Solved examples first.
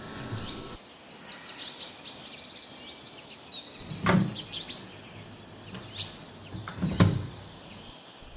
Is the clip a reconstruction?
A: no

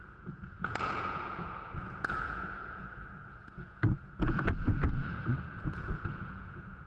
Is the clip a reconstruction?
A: yes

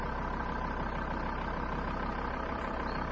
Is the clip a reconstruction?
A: no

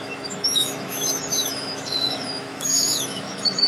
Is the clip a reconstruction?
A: yes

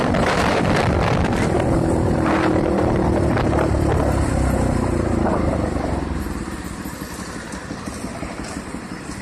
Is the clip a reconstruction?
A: yes